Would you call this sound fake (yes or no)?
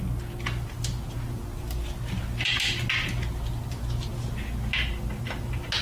no